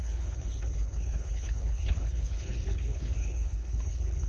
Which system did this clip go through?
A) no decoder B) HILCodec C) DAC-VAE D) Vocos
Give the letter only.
B